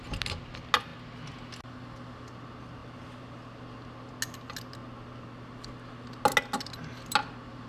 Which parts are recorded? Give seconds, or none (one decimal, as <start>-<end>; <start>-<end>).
0.0-7.7